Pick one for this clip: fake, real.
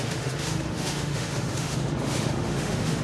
fake